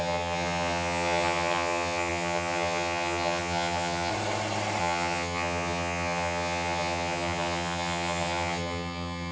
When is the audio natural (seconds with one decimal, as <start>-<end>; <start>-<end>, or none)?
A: 4.1-4.8